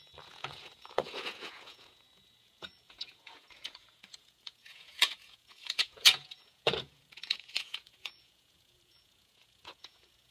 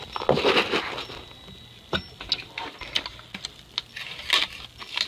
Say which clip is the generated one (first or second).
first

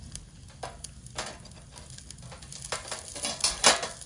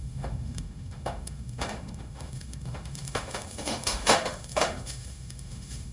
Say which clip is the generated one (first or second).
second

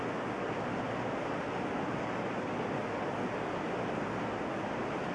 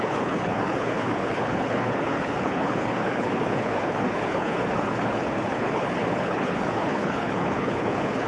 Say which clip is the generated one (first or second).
second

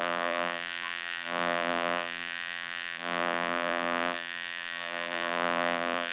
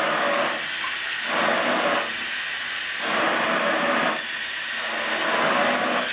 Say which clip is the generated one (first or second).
first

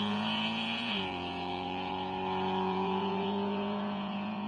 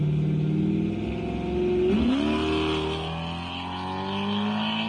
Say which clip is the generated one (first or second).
first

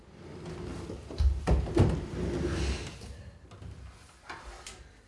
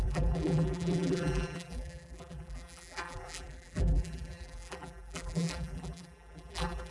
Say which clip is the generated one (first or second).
second